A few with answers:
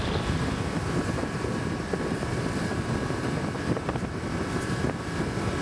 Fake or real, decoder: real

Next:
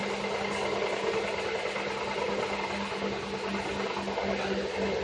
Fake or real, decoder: real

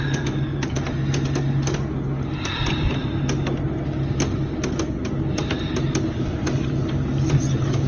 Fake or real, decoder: real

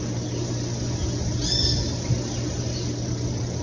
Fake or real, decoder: real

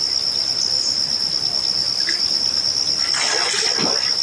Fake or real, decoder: real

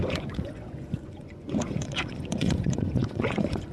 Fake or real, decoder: fake, vocoder, Vocos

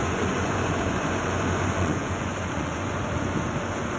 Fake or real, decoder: fake, vocoder, Vocos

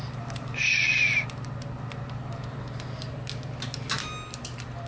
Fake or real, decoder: real